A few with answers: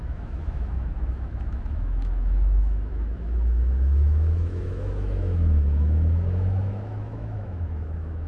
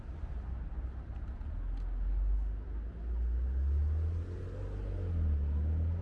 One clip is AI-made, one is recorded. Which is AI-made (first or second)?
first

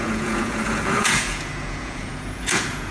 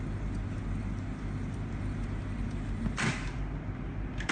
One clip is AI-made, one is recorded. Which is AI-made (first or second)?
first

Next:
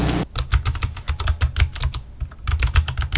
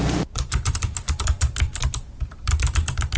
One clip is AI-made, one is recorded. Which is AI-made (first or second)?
second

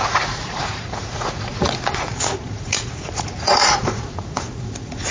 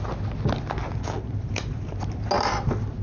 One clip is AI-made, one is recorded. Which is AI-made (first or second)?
first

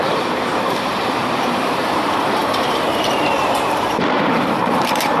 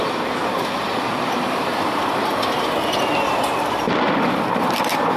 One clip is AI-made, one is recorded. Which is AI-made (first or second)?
first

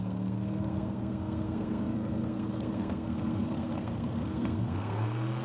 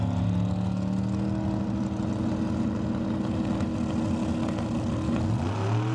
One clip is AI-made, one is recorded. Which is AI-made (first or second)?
first